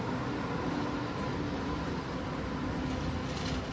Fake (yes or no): no